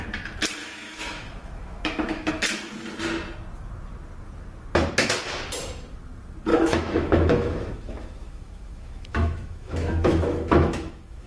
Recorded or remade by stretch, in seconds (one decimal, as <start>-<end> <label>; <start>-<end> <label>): 0.0-0.6 recorded; 0.6-2.3 remade; 2.3-6.5 recorded; 6.5-11.3 remade